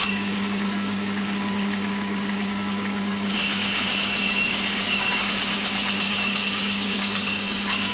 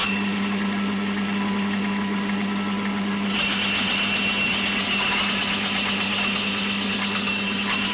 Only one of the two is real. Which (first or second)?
second